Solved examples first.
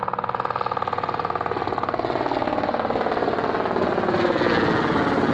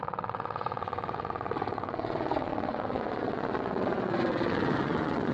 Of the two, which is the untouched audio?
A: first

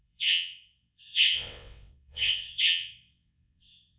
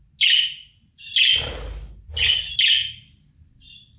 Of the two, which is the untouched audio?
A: second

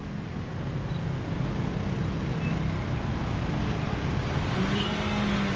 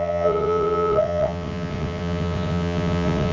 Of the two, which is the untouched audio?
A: first